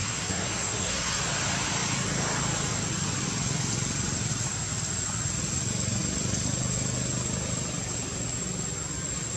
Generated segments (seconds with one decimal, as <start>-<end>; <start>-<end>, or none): 0.0-1.2